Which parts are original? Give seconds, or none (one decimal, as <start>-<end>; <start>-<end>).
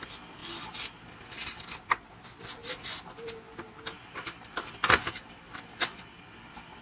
0.0-6.8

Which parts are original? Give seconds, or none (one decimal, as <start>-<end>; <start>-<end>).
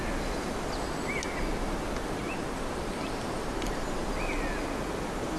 0.0-2.2; 4.1-5.4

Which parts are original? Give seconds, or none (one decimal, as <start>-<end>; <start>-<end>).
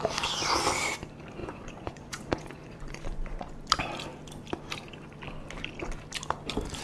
0.0-1.4; 3.5-6.8